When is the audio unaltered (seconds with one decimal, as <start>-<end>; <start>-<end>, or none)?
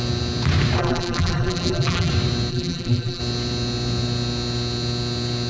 0.0-0.8; 2.1-2.5; 3.2-5.5